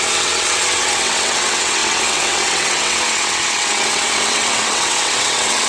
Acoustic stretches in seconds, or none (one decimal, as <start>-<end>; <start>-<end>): none